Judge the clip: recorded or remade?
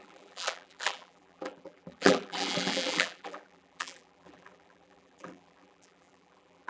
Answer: remade